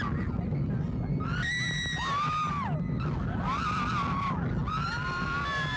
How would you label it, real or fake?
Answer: real